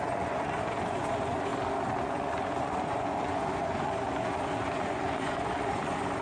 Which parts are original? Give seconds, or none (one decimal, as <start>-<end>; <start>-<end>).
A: 1.5-2.0